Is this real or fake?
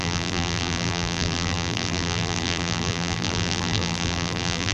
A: fake